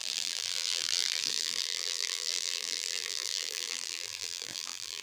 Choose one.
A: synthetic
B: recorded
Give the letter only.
A